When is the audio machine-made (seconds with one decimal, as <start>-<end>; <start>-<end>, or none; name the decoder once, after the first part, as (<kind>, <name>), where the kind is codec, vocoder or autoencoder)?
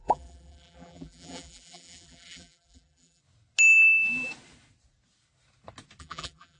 0.0-3.2 (vocoder, BigVGAN v2); 6.0-6.6